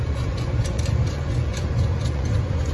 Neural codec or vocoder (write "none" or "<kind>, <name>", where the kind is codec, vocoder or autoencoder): vocoder, Vocos